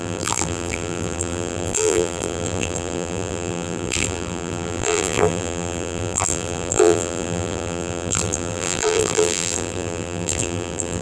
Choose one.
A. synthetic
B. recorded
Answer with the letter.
A